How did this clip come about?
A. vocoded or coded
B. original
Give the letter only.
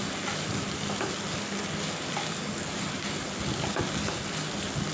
B